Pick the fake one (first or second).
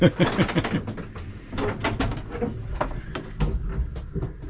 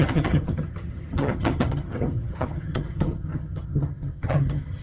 second